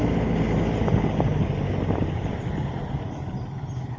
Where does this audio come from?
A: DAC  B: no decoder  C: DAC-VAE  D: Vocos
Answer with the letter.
B